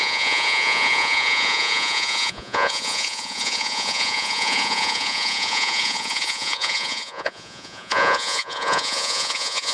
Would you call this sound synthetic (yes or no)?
yes